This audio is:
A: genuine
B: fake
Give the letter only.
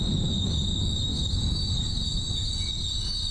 A